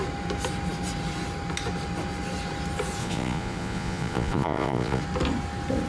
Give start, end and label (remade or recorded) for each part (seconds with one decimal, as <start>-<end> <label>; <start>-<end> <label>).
0.0-3.0 recorded; 3.0-5.0 remade; 5.0-5.9 recorded